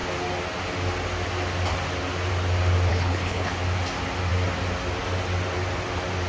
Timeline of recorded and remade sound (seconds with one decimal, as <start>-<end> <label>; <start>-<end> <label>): 0.0-2.9 recorded; 2.9-3.5 remade; 3.5-6.3 recorded